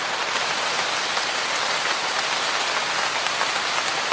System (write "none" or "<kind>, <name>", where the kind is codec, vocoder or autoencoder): none